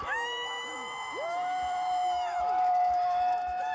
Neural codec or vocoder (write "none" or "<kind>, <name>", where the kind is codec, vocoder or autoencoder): autoencoder, DAC-VAE